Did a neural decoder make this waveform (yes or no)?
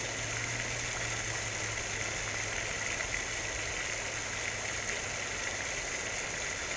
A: no